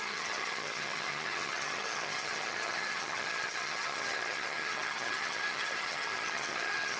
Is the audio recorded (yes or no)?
no